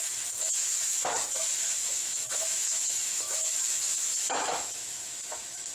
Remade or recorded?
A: remade